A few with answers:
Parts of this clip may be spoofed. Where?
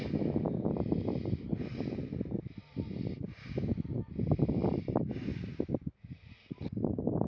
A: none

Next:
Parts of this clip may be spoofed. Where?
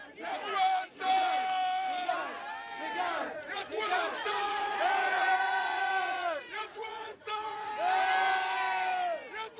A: 3.2-7.7 (vocoder, Vocos)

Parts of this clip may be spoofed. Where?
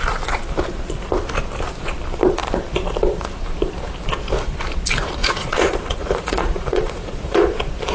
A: 5.2-7.4 (vocoder, Vocos)